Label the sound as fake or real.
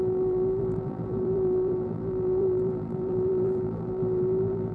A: fake